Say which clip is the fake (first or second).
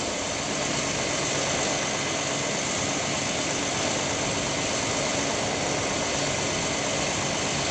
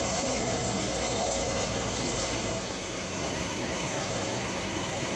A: second